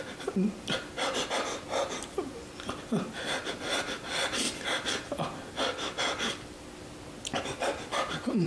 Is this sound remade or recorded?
recorded